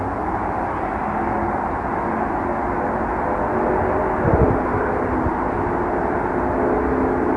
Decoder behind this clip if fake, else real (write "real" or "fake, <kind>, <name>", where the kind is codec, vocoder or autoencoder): real